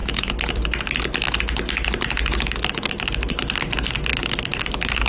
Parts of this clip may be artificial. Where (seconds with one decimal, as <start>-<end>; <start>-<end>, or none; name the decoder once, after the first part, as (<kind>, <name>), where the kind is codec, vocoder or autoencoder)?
none